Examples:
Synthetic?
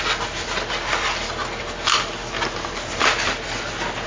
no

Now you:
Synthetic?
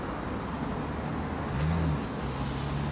no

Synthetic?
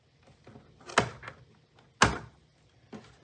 no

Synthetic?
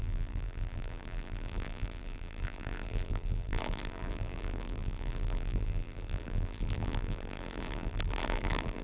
yes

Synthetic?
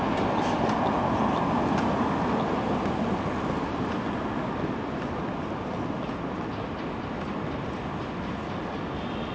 no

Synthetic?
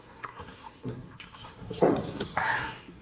yes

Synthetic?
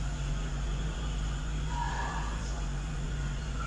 yes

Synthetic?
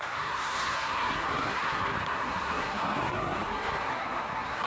yes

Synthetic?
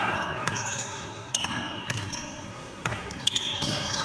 yes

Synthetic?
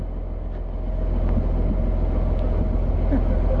no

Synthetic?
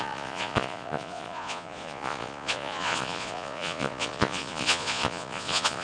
yes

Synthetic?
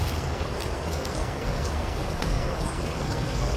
yes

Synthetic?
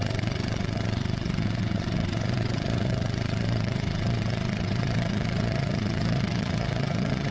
yes